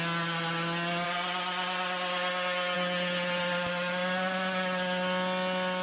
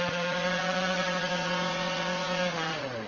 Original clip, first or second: first